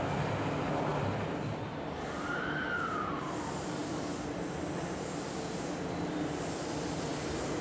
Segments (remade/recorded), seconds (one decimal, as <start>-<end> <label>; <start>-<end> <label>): 0.0-3.8 recorded; 3.8-6.6 remade; 6.6-7.6 recorded